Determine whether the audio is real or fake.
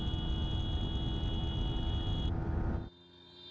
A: real